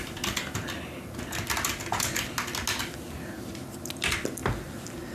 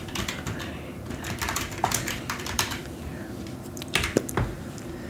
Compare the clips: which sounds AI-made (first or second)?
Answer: second